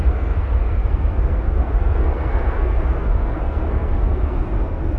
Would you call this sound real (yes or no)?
no